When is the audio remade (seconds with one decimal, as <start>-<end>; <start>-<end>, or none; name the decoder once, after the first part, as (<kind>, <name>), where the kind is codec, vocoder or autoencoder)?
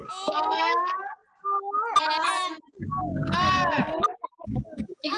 0.0-1.2 (codec, DAC); 4.3-5.2